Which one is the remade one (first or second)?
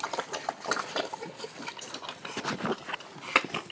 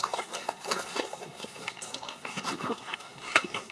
second